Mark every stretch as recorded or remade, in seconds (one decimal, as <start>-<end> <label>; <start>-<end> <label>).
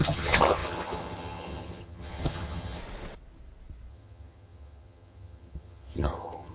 0.0-2.8 remade; 2.8-3.9 recorded; 3.9-6.5 remade